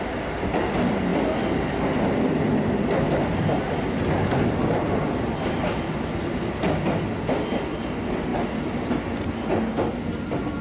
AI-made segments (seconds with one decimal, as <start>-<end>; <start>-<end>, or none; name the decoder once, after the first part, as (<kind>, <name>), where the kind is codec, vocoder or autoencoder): none